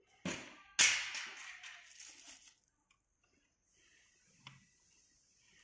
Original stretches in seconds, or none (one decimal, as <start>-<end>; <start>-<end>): 0.0-5.6